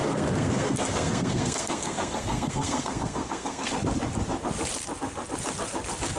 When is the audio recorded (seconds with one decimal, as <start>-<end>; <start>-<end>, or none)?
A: 3.7-6.2